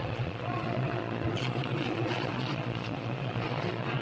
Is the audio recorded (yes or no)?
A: no